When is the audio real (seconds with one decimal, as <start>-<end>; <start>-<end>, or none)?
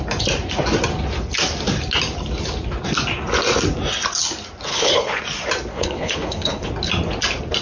0.0-4.7; 5.2-5.7; 6.7-7.6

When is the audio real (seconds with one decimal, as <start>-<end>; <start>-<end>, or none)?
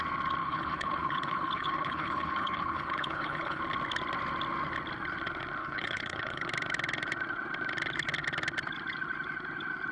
0.0-0.4; 3.6-5.6; 6.5-9.9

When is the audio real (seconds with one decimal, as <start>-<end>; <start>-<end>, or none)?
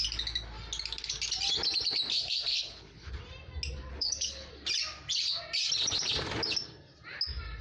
0.0-2.5; 3.1-3.9; 4.5-7.6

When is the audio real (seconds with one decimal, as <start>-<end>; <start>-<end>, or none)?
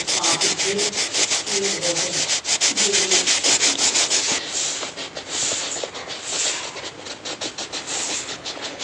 0.0-8.0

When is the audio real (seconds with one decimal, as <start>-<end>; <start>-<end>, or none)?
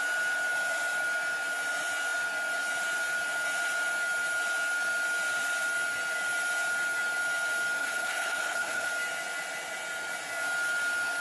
0.0-7.8; 8.9-11.2